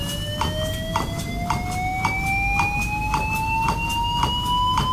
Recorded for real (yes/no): yes